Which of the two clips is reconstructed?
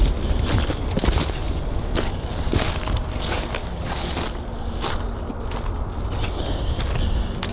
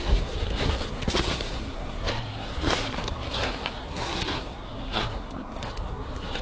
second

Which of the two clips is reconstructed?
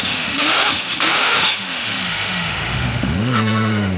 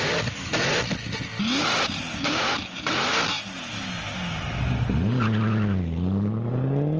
first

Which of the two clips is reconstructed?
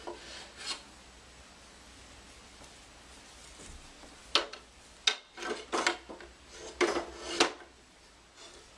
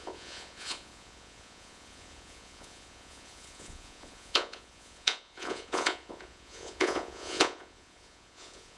second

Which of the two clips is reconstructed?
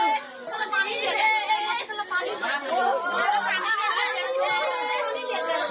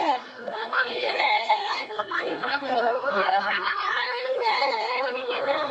second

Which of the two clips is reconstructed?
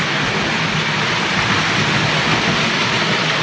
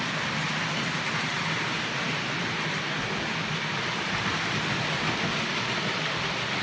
second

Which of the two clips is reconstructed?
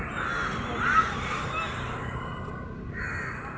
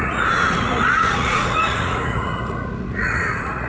second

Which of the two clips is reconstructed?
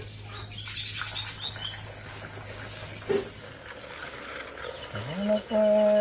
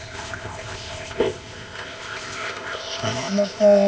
second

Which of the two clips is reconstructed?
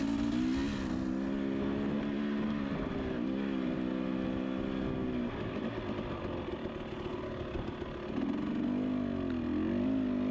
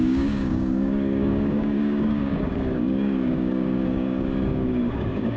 second